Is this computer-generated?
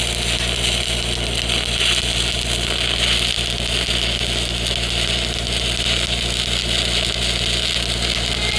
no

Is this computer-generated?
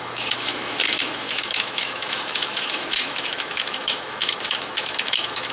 yes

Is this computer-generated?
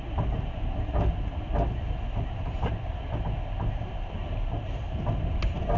no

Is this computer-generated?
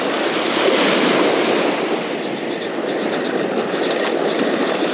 no